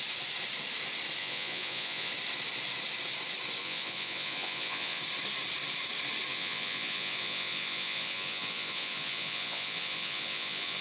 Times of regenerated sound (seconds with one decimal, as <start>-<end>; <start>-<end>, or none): 1.2-2.1; 3.6-5.0; 6.3-10.8